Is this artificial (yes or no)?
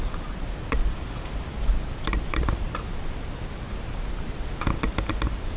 no